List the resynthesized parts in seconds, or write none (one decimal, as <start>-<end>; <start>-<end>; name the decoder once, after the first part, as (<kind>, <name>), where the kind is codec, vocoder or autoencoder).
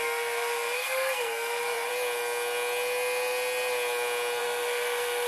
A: 0.0-1.9 (codec, SNAC); 4.4-5.3